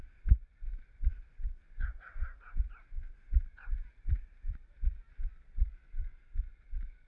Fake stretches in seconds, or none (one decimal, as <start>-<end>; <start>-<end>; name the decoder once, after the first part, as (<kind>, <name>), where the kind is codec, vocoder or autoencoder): 0.0-1.1 (vocoder, BigVGAN v2); 3.4-6.1